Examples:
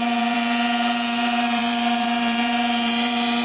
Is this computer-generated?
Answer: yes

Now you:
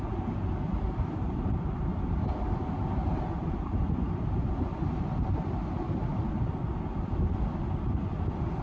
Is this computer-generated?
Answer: no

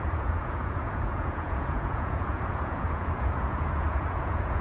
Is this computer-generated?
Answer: yes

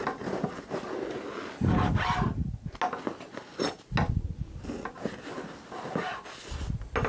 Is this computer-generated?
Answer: no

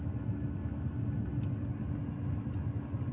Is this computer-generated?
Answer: no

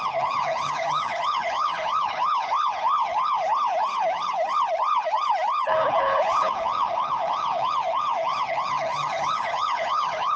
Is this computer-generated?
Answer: yes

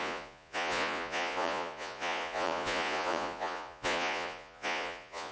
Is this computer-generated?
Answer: yes